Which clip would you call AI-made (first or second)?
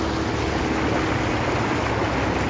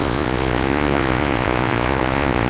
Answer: second